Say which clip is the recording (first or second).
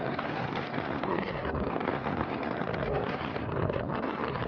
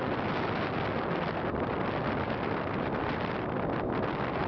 second